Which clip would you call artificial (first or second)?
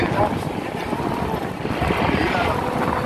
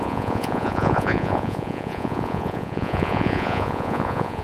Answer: second